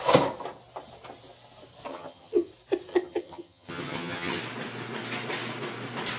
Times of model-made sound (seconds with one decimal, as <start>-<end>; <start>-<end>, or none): 1.9-2.5; 2.9-4.4